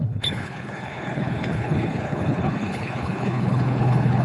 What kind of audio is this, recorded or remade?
remade